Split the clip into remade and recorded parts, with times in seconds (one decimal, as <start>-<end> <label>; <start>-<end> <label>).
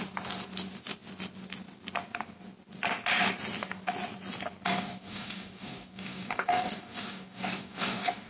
0.0-4.7 recorded; 4.7-8.3 remade